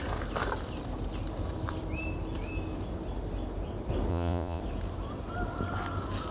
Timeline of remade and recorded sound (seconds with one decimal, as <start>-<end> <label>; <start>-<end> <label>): 0.0-4.1 recorded; 4.1-4.6 remade; 4.6-6.3 recorded